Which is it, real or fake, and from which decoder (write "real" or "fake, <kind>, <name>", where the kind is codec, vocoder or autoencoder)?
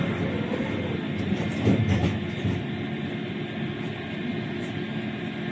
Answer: real